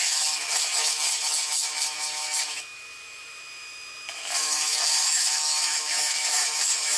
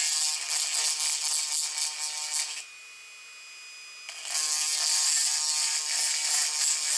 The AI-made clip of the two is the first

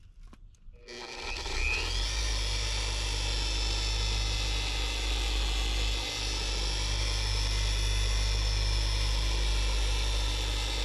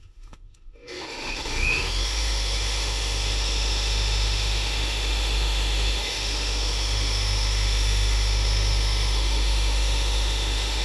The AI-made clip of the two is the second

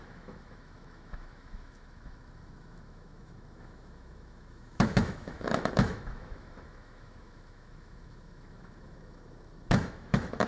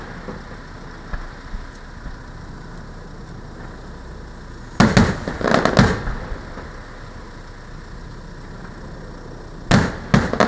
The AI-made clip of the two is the first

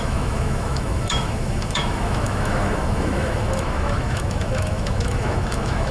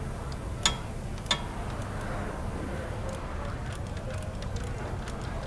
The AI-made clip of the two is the first